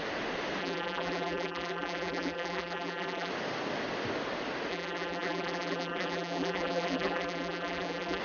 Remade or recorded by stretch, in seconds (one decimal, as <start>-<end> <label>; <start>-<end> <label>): 0.0-0.6 recorded; 0.6-3.3 remade; 3.3-4.7 recorded; 4.7-8.2 remade